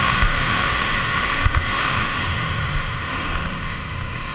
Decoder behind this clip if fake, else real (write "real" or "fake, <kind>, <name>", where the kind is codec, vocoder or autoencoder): fake, autoencoder, DAC-VAE